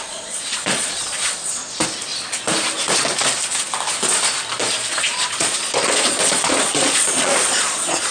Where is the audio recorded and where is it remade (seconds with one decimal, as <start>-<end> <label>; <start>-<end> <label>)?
0.0-1.6 remade; 1.6-4.9 recorded; 4.9-8.1 remade